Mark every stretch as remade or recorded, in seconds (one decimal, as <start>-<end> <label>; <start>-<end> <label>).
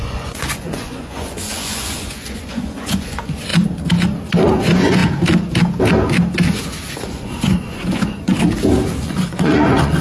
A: 0.0-3.5 remade; 3.5-4.6 recorded; 4.6-5.0 remade; 5.0-7.0 recorded; 7.0-8.3 remade; 8.3-9.0 recorded; 9.0-10.0 remade